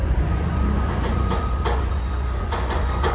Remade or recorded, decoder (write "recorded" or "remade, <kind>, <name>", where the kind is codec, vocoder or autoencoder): remade, vocoder, Vocos